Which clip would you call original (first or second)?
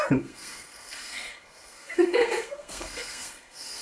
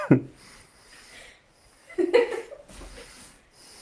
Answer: second